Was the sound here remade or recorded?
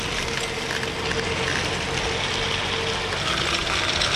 recorded